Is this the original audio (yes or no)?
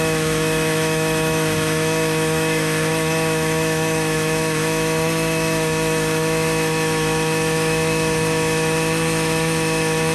no